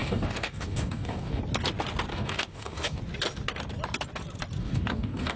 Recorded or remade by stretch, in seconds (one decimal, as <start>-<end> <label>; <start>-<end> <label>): 0.0-1.4 remade; 1.4-2.1 recorded; 2.1-3.0 remade; 3.0-4.6 recorded; 4.6-5.4 remade